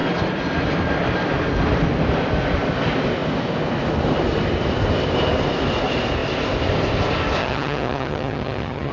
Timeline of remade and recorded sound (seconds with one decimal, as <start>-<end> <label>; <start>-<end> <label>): 0.0-7.4 recorded; 7.4-8.9 remade